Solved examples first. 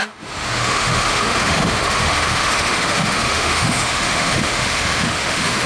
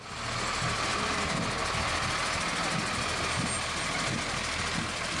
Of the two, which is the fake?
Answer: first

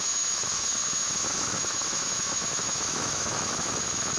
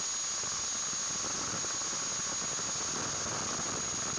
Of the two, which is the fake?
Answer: first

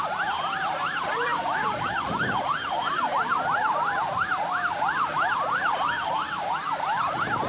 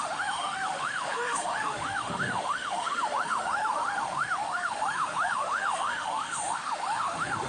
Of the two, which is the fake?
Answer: second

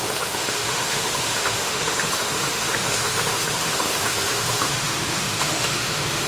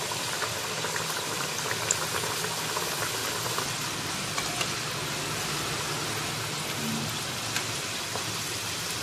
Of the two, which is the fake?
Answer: first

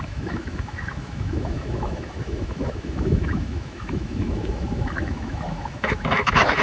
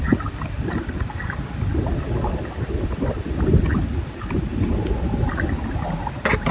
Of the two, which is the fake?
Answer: first